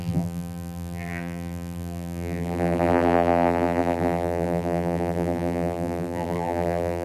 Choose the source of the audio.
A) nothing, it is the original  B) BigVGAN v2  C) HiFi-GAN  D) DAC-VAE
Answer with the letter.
B